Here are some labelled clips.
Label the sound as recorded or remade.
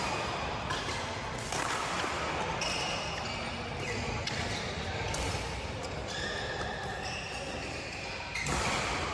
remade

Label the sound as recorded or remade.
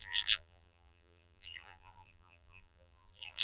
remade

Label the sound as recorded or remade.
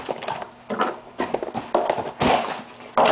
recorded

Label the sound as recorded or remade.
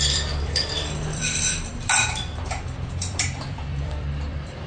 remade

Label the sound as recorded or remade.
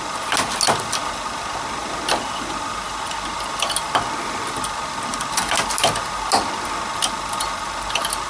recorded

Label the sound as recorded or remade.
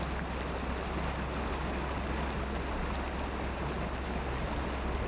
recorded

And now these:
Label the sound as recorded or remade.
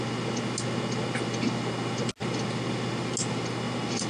recorded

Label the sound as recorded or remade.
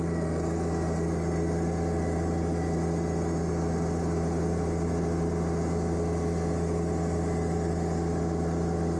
recorded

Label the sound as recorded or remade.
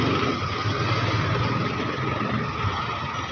recorded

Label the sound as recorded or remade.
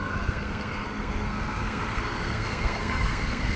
remade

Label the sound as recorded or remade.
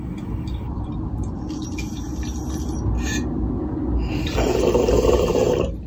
recorded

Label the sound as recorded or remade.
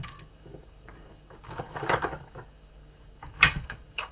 remade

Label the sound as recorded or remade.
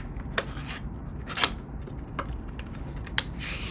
recorded